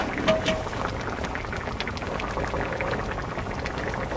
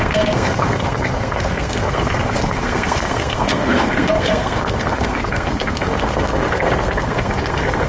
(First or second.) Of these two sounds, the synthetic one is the second